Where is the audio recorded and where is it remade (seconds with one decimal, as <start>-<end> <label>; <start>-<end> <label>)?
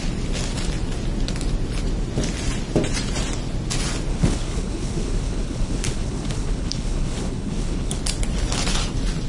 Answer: 0.0-4.1 recorded; 4.1-8.0 remade; 8.0-9.3 recorded